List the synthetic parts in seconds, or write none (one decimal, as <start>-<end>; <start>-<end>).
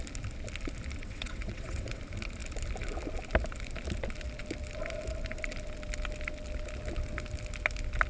1.0-2.0